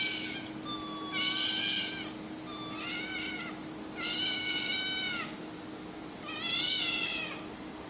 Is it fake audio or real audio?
real